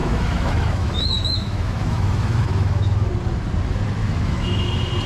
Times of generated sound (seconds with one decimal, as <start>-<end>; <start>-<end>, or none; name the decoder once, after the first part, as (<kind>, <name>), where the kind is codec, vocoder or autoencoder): 0.0-3.1 (autoencoder, DAC-VAE); 4.0-4.6